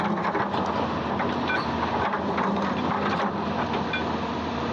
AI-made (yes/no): no